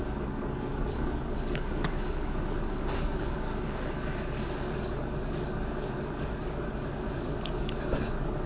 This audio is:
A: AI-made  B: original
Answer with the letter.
A